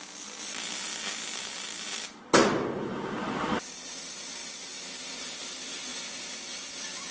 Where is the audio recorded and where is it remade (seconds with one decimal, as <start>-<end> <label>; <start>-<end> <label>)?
0.0-7.1 recorded